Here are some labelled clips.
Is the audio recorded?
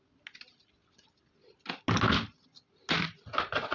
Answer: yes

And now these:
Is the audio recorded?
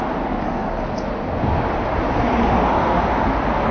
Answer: yes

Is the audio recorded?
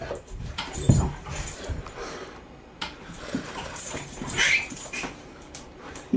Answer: no